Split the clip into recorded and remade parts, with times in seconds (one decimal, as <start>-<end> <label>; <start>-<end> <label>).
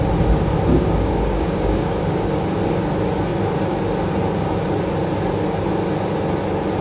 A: 0.0-0.7 recorded; 0.7-1.9 remade; 1.9-6.8 recorded